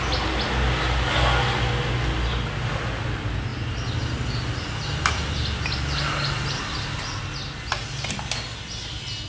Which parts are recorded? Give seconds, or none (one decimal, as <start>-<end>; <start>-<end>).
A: 0.0-9.3